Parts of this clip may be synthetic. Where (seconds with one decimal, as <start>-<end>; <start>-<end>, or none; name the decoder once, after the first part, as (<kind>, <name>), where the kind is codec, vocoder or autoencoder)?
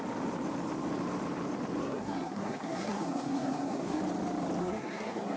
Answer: 1.8-4.0 (codec, SNAC); 4.6-5.4